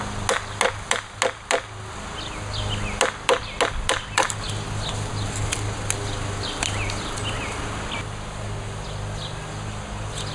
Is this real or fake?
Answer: real